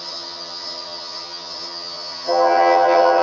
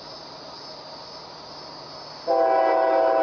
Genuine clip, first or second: second